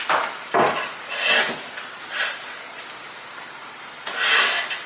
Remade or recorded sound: recorded